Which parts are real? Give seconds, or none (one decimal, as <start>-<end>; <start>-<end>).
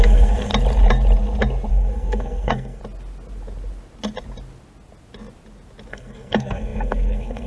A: 0.5-1.7; 2.8-5.9